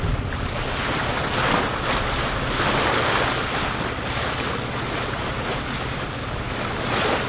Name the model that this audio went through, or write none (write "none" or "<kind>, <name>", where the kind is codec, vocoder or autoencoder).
none